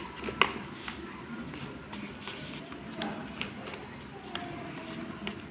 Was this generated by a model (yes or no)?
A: no